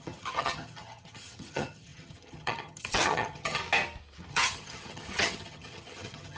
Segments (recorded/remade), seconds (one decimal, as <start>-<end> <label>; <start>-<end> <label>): 0.0-3.6 remade; 3.6-4.3 recorded; 4.3-6.4 remade